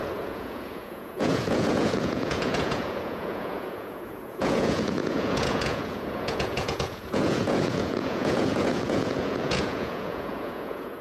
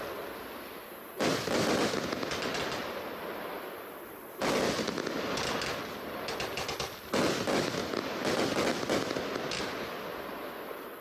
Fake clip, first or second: first